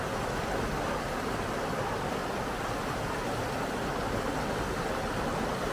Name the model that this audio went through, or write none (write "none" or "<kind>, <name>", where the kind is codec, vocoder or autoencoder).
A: none